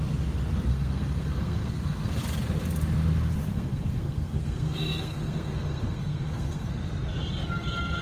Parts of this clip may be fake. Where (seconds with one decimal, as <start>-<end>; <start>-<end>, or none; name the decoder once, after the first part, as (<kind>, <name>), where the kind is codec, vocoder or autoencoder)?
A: 0.7-2.2 (codec, SNAC); 3.5-6.9